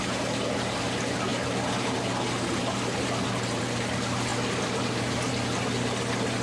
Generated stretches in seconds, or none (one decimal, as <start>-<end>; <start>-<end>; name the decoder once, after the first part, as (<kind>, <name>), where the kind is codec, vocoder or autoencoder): 0.0-1.3 (vocoder, BigVGAN v2); 3.6-4.3; 5.3-6.4